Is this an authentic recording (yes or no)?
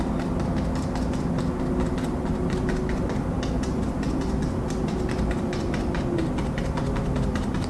yes